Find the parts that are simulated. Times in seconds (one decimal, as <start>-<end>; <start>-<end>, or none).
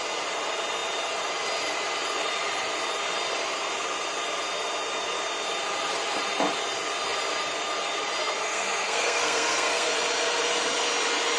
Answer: 8.2-9.9